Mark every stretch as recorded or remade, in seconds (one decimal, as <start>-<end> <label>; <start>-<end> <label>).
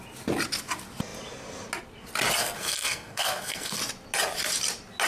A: 0.0-2.4 recorded; 2.4-3.8 remade; 3.8-5.1 recorded